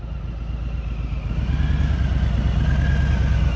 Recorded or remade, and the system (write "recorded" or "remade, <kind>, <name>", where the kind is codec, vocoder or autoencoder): recorded